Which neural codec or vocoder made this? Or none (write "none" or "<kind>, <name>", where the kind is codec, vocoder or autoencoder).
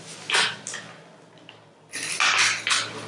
none